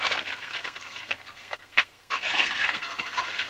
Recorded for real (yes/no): no